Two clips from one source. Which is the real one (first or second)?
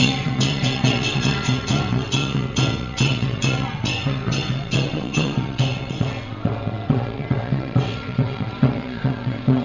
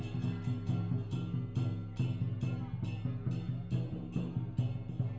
second